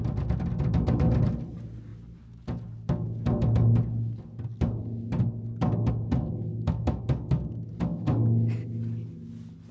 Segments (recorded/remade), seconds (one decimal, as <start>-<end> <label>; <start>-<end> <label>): 0.0-6.5 recorded; 6.5-7.0 remade; 7.0-9.7 recorded

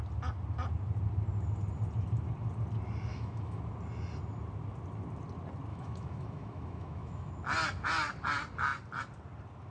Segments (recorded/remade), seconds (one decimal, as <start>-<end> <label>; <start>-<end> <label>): 0.0-3.1 recorded; 3.1-3.6 remade; 3.6-5.7 recorded; 5.7-7.3 remade; 7.3-9.7 recorded

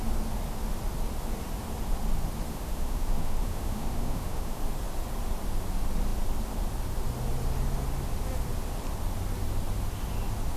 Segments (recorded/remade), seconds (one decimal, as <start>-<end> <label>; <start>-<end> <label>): 0.0-2.5 recorded; 2.5-4.6 remade; 4.6-10.6 recorded

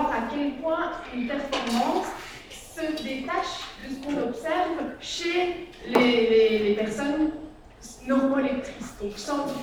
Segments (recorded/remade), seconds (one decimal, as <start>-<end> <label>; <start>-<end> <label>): 0.0-9.6 recorded